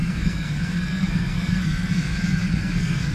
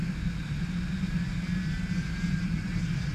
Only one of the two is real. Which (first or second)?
second